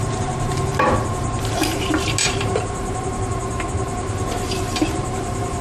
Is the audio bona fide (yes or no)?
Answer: no